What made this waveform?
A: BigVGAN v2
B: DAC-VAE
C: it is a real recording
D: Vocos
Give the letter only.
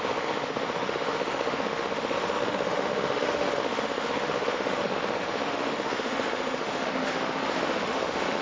B